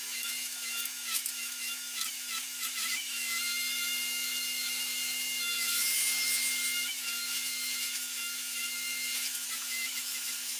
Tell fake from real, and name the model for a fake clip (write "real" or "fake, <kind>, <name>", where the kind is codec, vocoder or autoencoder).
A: fake, autoencoder, DAC-VAE